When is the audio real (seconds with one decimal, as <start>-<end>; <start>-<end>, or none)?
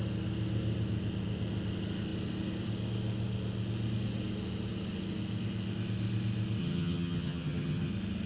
0.0-6.6; 7.9-8.3